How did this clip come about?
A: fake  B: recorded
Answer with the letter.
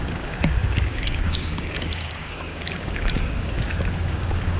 A